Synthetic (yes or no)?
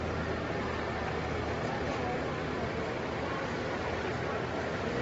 no